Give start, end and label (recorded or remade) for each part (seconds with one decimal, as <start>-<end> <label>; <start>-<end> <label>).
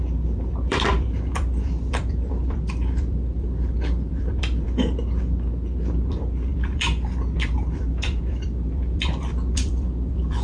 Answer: 0.0-5.0 remade; 5.0-6.1 recorded; 6.1-10.4 remade